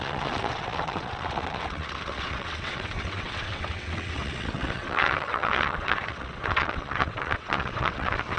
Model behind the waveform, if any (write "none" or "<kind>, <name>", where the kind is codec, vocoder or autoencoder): vocoder, WaveNeXt